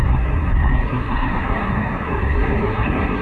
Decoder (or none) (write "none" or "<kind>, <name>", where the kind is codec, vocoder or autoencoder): codec, SNAC